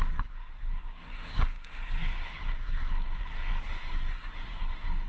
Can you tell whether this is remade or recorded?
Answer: remade